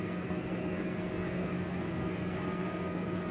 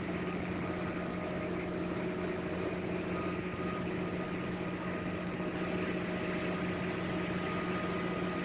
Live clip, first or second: second